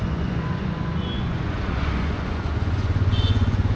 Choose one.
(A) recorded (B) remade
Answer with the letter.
B